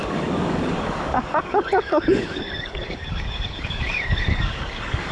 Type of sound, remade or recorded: remade